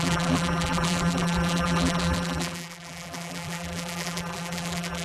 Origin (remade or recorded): remade